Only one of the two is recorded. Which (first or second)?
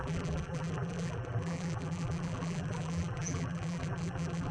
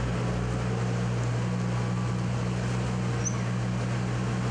second